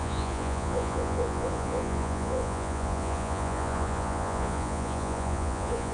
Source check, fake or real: fake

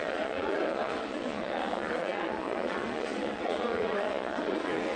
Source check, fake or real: fake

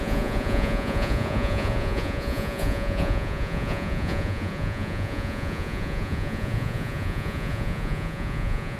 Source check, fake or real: fake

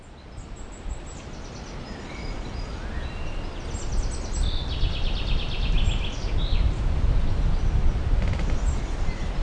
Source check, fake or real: real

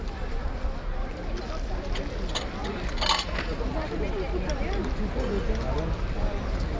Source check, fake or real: real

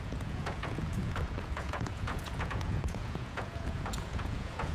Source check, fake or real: fake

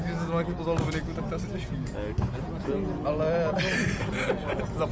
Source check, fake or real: real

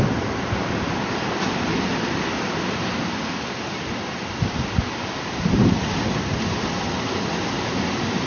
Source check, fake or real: real